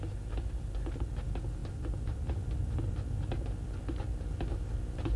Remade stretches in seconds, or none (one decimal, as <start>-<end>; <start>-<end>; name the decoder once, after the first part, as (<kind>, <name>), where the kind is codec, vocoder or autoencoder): none